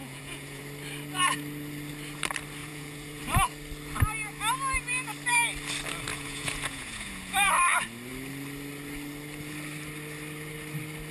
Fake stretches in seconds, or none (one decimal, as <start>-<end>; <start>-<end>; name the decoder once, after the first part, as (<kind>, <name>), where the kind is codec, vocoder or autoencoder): 0.0-0.6 (vocoder, Vocos); 2.6-3.2; 6.1-7.5

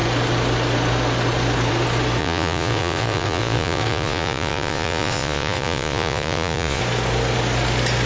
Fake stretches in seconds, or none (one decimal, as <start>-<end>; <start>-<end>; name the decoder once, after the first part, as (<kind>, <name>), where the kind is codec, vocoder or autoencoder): 2.2-6.8 (vocoder, Vocos)

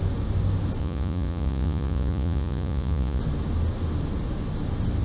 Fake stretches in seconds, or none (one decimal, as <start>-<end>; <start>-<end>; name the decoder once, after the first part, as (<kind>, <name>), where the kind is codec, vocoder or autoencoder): 0.8-3.2 (vocoder, Vocos)